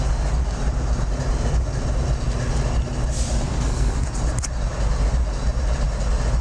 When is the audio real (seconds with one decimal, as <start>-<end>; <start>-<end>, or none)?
0.0-3.5; 4.0-6.4